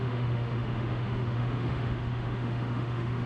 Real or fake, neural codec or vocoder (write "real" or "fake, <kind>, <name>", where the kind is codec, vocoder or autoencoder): fake, autoencoder, DAC-VAE